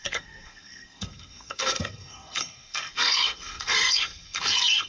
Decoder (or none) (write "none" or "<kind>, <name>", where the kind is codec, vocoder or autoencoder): codec, SNAC